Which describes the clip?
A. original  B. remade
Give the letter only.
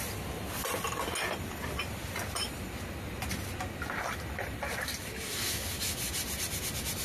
A